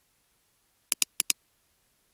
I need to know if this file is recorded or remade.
recorded